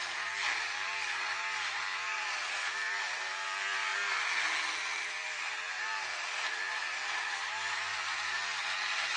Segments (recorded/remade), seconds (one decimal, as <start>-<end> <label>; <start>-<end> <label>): 0.0-3.9 remade; 3.9-4.8 recorded; 4.8-9.2 remade